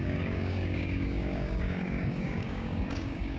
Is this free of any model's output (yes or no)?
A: no